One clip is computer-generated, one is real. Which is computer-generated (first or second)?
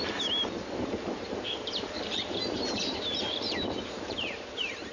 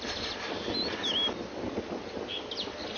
first